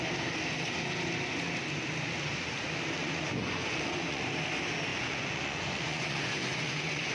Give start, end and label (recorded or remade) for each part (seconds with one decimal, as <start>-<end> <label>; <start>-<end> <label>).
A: 0.0-3.0 recorded; 3.0-4.3 remade; 4.3-4.9 recorded; 4.9-7.1 remade